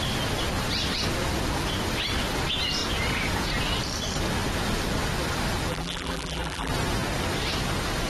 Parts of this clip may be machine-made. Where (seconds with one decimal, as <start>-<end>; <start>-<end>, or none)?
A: 5.7-6.7